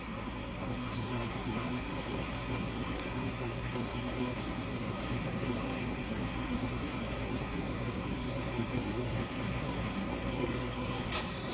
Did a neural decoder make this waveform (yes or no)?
yes